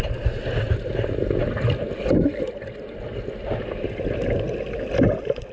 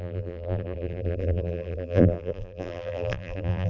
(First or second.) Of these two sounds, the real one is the first